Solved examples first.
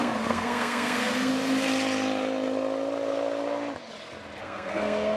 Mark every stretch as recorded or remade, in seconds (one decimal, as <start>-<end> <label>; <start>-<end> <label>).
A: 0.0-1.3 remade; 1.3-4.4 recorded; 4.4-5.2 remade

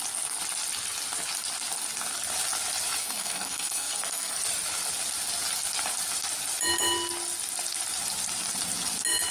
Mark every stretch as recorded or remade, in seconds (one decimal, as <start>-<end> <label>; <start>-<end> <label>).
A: 0.0-3.0 recorded; 3.0-4.4 remade; 4.4-9.3 recorded

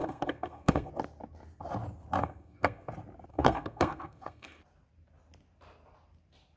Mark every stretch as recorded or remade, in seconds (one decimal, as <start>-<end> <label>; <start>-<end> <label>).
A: 0.0-0.9 remade; 0.9-2.2 recorded; 2.2-2.9 remade; 2.9-3.3 recorded; 3.3-4.6 remade; 4.6-6.6 recorded